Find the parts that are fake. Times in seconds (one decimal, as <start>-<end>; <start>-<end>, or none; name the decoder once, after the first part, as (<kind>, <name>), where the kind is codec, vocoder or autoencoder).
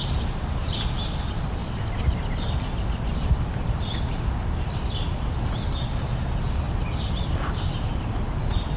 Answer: none